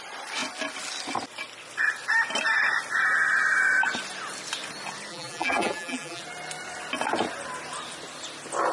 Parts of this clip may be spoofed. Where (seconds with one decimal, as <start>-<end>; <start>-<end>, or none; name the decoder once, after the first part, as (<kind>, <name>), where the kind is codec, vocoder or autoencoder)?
5.1-6.2 (vocoder, BigVGAN v2)